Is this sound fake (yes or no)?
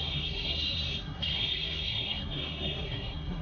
yes